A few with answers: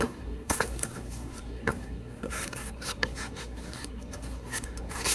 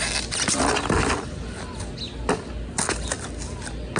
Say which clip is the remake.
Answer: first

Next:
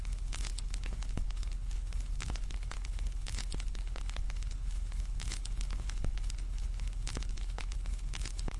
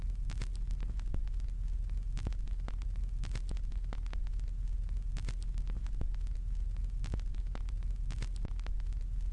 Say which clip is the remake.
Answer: first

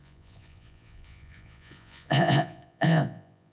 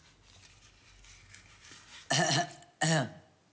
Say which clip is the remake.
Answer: first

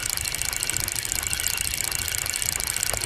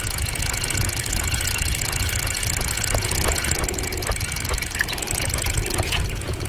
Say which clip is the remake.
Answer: second